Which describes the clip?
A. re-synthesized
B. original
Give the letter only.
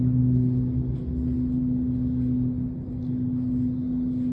B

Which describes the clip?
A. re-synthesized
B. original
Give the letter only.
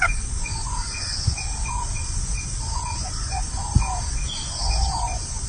A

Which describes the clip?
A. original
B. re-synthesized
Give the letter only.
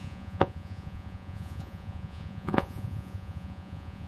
B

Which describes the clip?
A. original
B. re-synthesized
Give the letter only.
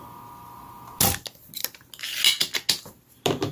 A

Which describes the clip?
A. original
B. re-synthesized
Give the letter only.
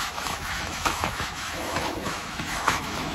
B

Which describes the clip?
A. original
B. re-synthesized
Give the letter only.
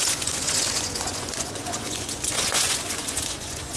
B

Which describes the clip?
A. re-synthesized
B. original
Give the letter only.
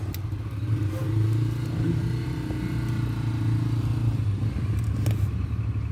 B